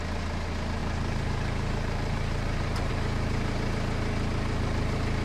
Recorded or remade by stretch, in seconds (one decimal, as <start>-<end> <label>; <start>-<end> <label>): 0.0-0.8 recorded; 0.8-2.9 remade; 2.9-5.2 recorded